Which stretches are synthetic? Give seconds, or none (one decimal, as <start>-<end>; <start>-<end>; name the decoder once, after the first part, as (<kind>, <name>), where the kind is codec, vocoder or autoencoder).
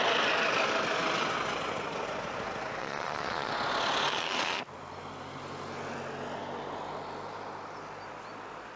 2.8-3.5 (vocoder, Vocos); 4.1-4.6